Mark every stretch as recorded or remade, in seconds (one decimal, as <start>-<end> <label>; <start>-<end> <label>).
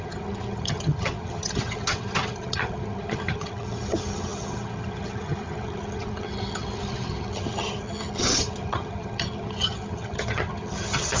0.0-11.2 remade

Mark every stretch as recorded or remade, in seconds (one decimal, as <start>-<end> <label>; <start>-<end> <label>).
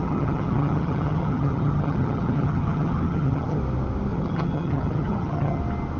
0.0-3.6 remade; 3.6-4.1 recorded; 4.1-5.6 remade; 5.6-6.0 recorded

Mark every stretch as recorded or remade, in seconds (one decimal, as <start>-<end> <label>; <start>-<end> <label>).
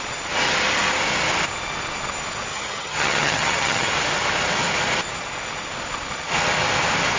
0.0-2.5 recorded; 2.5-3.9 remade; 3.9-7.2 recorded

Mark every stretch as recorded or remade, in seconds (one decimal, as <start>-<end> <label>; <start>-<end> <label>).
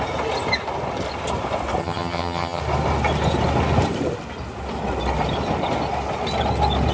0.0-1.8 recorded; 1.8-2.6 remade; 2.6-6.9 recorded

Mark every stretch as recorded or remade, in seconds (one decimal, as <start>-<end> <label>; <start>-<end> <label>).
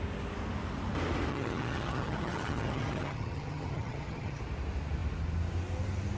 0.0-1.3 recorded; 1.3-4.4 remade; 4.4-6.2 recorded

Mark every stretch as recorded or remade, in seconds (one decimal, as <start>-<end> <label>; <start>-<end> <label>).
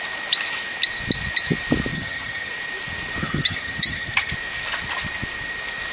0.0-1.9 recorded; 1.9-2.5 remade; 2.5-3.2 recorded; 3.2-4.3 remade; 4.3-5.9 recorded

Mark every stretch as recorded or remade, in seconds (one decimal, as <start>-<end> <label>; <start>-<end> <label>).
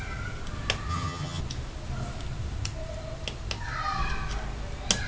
0.0-0.9 recorded; 0.9-1.4 remade; 1.4-5.1 recorded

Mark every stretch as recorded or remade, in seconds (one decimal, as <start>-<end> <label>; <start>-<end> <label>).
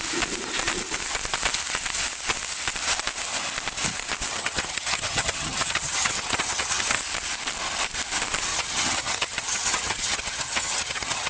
0.0-4.3 recorded; 4.3-7.0 remade; 7.0-8.5 recorded; 8.5-11.3 remade